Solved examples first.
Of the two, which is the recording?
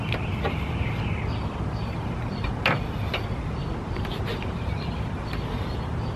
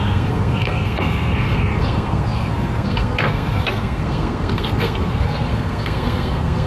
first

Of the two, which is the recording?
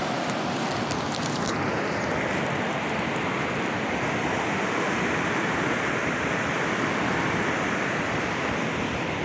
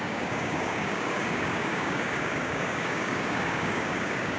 first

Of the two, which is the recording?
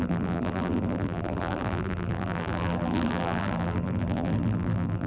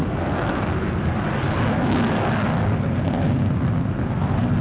second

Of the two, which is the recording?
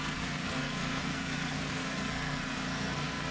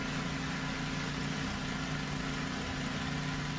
second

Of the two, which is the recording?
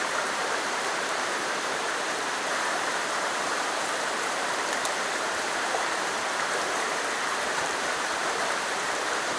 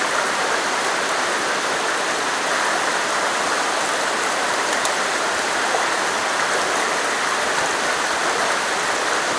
second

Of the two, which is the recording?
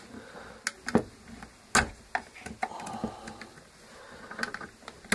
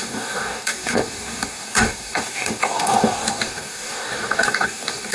first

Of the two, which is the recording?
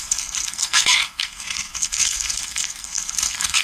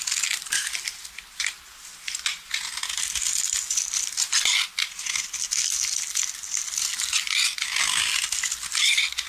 second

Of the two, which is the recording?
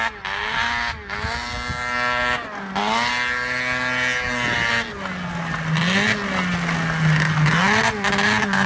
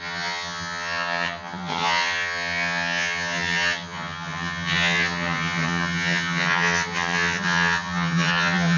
first